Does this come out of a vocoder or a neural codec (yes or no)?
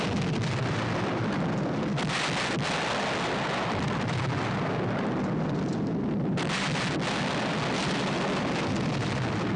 no